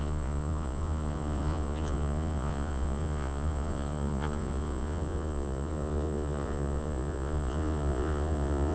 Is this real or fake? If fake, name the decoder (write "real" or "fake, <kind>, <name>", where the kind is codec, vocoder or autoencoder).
fake, vocoder, Vocos